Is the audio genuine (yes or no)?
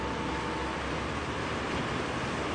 yes